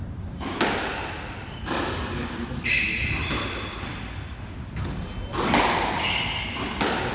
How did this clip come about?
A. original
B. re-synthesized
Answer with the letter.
A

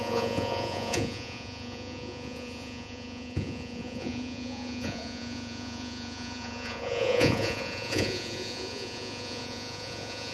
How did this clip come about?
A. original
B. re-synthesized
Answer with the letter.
B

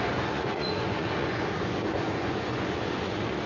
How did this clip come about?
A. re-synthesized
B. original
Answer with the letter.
A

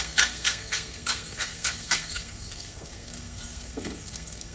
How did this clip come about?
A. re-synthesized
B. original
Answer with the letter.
A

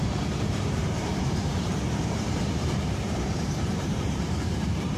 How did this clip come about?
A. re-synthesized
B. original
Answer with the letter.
A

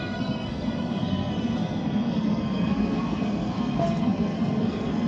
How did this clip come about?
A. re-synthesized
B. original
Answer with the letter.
A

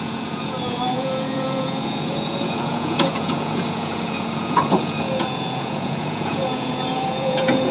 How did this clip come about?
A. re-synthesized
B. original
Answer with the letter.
A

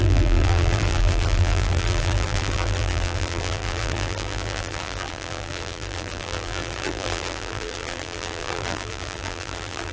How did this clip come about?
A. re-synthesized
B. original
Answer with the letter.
A